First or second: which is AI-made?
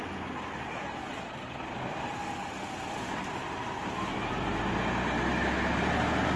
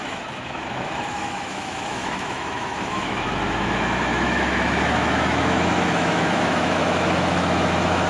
second